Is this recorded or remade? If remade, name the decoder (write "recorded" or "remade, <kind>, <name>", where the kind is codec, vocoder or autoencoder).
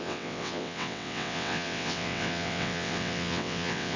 remade, vocoder, WaveNeXt